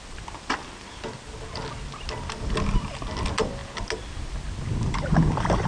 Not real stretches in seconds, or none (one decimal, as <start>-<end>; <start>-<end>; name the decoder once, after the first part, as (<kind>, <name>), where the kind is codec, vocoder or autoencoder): none